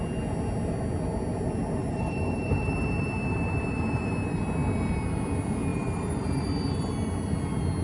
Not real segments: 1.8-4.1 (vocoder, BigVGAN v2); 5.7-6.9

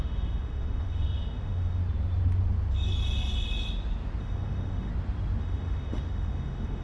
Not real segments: 0.0-1.8 (autoencoder, DAC-VAE); 4.2-4.9; 5.4-6.8

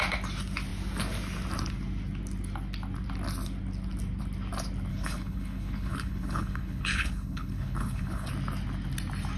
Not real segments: 4.9-8.3 (codec, HILCodec)

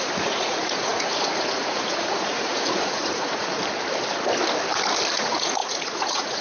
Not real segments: 0.0-3.6 (vocoder, Vocos); 5.1-6.4